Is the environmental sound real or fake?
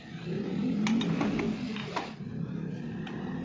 real